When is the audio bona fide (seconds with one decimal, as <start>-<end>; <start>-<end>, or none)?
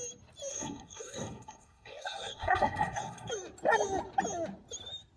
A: 0.0-0.5; 3.3-5.2